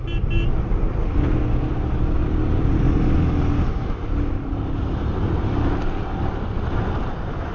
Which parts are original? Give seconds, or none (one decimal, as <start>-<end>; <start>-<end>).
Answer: 0.0-7.5